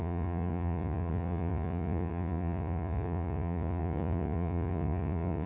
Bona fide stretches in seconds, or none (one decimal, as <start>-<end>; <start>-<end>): none